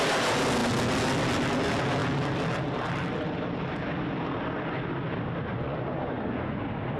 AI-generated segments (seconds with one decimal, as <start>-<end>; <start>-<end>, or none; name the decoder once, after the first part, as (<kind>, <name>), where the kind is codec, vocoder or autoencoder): 5.5-6.6 (vocoder, Vocos)